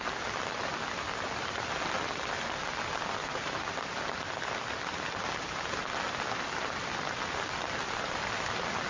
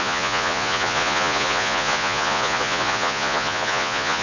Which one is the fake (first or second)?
second